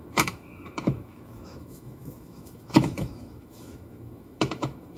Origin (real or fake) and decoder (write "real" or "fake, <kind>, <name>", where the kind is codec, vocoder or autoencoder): fake, autoencoder, DAC-VAE